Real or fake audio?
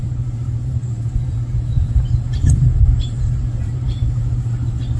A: fake